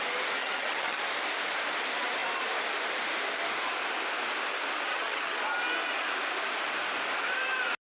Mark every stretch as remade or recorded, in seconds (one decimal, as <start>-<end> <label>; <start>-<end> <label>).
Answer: 0.0-0.4 recorded; 0.4-1.0 remade; 1.0-4.9 recorded; 4.9-5.4 remade; 5.4-8.0 recorded

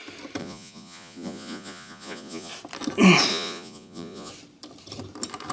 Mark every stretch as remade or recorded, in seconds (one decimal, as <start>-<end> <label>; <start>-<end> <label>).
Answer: 0.0-0.4 recorded; 0.4-2.5 remade; 2.5-3.3 recorded; 3.3-4.3 remade; 4.3-5.5 recorded

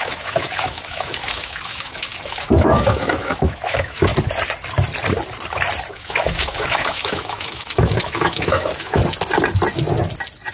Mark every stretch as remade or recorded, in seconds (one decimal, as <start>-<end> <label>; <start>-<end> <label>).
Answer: 0.0-4.1 remade; 4.1-5.9 recorded; 5.9-9.0 remade; 9.0-10.5 recorded

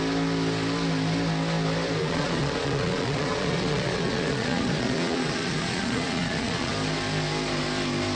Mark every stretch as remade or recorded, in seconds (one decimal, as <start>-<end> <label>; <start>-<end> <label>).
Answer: 0.0-2.0 recorded; 2.0-6.7 remade; 6.7-8.2 recorded

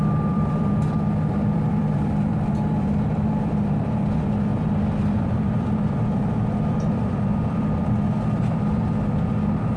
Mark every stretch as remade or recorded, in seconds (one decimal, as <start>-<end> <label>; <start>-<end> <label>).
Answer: 0.0-4.5 remade; 4.5-5.0 recorded; 5.0-9.8 remade

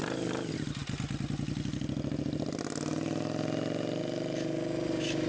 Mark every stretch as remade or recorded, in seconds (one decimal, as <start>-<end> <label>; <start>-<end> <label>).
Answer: 0.0-5.3 recorded

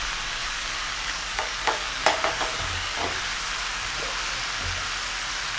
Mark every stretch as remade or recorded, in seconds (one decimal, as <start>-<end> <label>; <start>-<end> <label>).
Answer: 0.0-0.4 recorded; 0.4-3.2 remade; 3.2-5.6 recorded

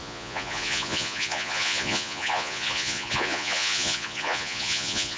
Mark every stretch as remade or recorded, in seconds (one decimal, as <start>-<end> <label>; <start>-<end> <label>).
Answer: 0.0-5.2 remade